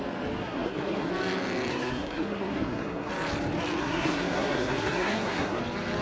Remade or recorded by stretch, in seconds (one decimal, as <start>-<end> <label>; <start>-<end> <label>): 0.0-0.4 recorded; 0.4-1.1 remade; 1.1-1.7 recorded; 1.7-3.1 remade; 3.1-3.8 recorded; 3.8-5.6 remade; 5.6-6.0 recorded